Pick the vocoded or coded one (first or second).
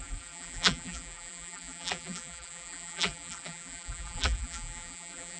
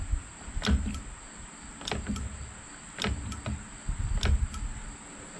first